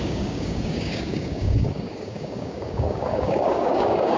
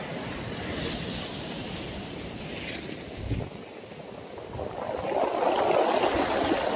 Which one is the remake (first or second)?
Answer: first